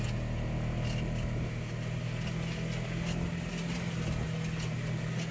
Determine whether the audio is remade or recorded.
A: recorded